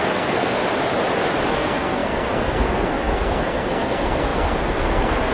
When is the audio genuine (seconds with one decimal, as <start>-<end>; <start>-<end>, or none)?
0.6-1.5